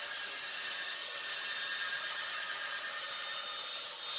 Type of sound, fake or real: real